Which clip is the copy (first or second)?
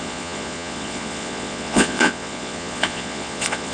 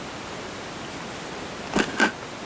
first